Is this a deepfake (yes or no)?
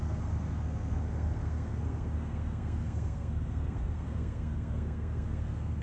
yes